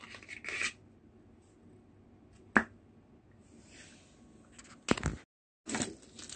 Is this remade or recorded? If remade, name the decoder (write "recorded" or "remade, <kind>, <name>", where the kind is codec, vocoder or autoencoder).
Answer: recorded